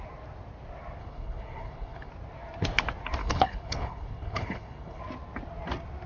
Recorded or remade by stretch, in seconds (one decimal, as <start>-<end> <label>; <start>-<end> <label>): 0.0-1.0 recorded; 1.0-2.1 remade; 2.1-3.2 recorded; 3.2-5.0 remade; 5.0-6.1 recorded